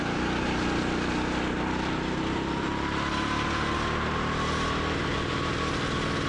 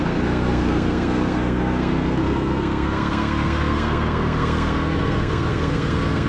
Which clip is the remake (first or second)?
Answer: second